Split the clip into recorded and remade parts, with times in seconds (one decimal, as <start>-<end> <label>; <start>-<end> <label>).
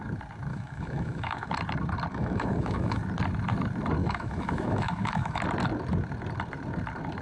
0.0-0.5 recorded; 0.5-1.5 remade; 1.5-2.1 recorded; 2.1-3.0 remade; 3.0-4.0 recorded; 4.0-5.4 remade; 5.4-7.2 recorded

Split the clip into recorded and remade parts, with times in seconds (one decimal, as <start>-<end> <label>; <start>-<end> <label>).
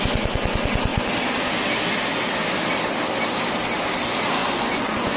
0.0-4.4 recorded; 4.4-5.2 remade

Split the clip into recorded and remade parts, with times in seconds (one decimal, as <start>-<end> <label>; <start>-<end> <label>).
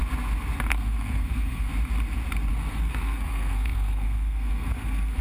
0.0-0.7 recorded; 0.7-1.7 remade; 1.7-2.5 recorded; 2.5-5.2 remade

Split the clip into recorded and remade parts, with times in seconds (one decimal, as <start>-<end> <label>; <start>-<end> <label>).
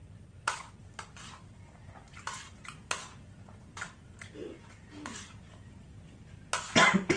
0.0-7.2 recorded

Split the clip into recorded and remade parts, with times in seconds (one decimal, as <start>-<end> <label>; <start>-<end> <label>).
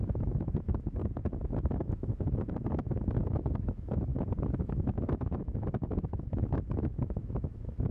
0.0-1.0 remade; 1.0-1.7 recorded; 1.7-7.9 remade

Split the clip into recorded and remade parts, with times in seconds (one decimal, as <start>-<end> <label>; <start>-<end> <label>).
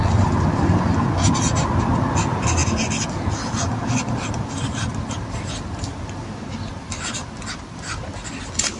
0.0-8.8 recorded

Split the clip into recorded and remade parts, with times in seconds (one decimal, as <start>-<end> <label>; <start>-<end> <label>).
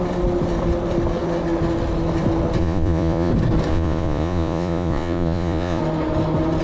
0.0-2.6 recorded; 2.6-3.3 remade; 3.3-3.7 recorded; 3.7-5.8 remade; 5.8-6.6 recorded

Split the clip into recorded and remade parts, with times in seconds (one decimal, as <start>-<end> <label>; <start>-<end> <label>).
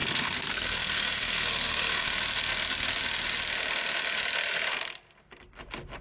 0.0-2.1 remade; 2.1-6.0 recorded